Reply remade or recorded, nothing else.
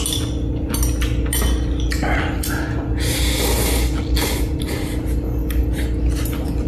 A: recorded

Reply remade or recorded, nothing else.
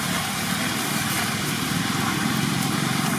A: remade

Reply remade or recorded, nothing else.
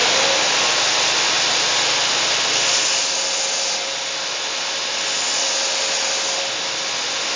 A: recorded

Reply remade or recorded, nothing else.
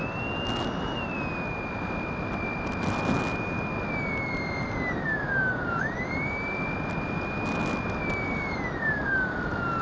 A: recorded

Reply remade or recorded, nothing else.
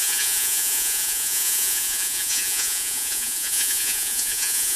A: remade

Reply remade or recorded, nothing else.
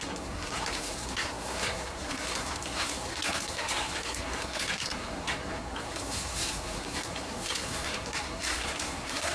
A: remade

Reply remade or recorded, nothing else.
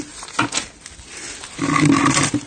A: recorded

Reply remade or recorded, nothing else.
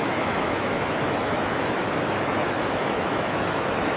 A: remade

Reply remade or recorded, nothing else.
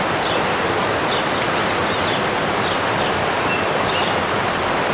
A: recorded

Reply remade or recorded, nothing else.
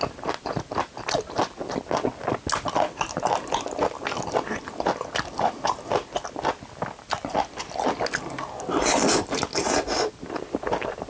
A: recorded